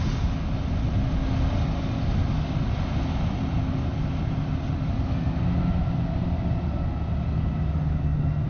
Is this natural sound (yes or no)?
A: yes